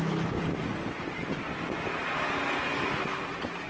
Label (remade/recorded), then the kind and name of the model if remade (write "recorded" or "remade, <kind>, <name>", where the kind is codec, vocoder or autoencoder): recorded